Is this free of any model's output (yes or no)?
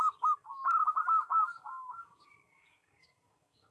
no